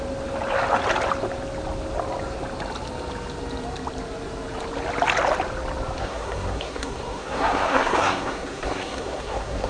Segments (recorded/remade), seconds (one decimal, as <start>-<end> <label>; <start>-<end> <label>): 0.0-6.0 recorded; 6.0-9.7 remade